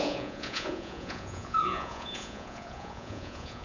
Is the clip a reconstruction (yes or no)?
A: yes